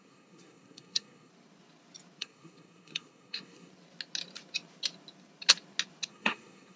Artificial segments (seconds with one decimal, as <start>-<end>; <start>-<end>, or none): 0.0-1.3; 2.2-3.7; 6.1-6.8